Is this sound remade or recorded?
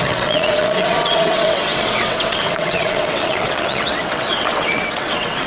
remade